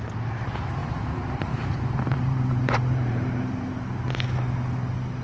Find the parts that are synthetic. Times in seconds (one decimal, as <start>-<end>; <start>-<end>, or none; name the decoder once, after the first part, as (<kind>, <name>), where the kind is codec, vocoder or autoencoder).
0.8-3.7 (vocoder, BigVGAN v2)